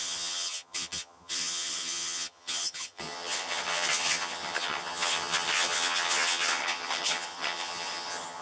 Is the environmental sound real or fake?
fake